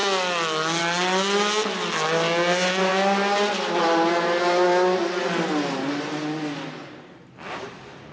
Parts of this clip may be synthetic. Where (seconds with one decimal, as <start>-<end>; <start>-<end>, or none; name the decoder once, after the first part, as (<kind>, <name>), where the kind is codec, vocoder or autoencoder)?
none